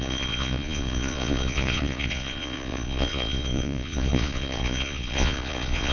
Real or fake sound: fake